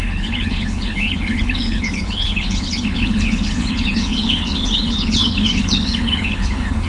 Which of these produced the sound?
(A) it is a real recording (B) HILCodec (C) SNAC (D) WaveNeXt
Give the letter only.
B